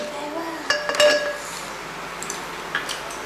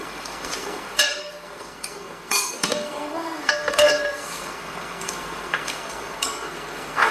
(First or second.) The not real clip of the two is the second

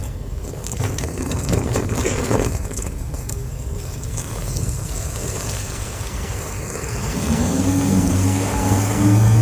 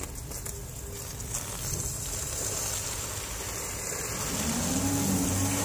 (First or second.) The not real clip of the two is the first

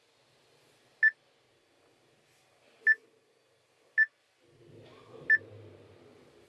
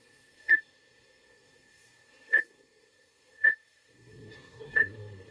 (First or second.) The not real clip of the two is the second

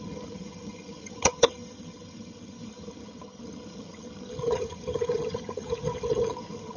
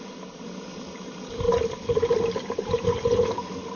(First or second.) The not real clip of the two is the first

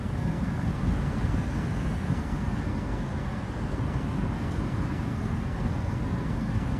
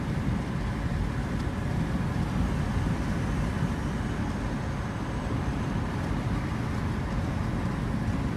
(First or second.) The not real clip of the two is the first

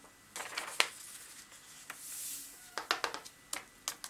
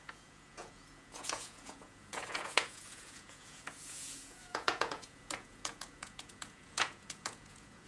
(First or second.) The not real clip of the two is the second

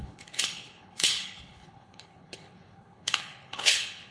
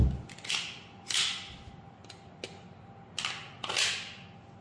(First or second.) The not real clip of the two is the first